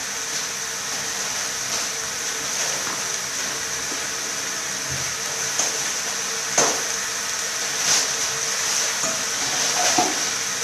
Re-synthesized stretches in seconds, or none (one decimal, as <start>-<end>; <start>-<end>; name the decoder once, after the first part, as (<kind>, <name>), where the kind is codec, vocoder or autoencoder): none